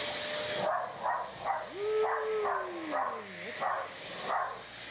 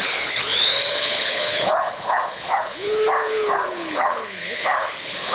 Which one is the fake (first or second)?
second